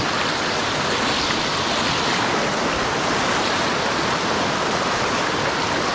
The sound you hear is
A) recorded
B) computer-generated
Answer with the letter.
A